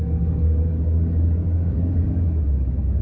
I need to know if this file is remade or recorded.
remade